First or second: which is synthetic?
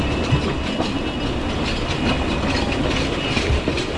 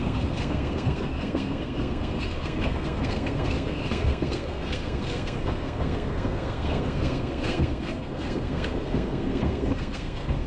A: second